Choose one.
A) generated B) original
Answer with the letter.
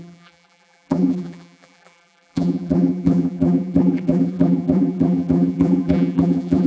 A